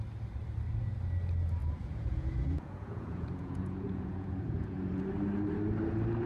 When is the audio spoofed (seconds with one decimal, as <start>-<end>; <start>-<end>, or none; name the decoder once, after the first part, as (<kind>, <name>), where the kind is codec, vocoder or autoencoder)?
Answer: 1.6-5.0 (vocoder, Vocos)